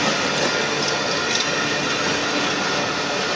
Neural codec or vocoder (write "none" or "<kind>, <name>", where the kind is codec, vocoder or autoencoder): none